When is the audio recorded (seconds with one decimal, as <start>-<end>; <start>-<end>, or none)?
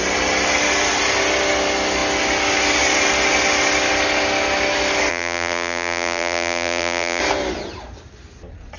0.0-5.1; 7.2-8.8